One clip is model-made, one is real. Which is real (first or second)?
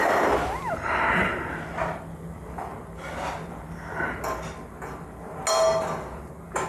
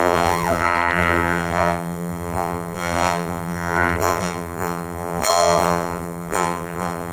first